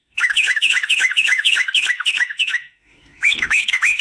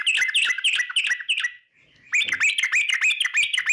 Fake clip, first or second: first